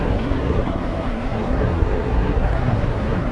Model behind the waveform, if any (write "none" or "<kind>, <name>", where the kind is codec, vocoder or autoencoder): codec, SNAC